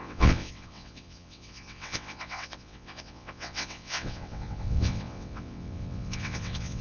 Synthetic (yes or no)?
yes